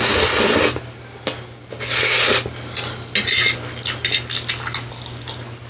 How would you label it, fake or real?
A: real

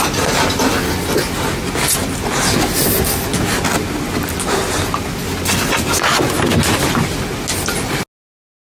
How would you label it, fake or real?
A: real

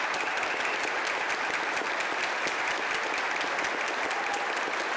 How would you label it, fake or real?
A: real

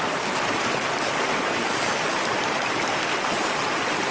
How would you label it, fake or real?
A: fake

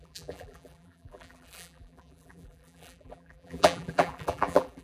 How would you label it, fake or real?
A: fake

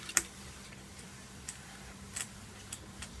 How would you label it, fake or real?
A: fake